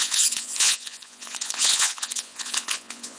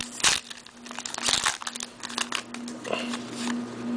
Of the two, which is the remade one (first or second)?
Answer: first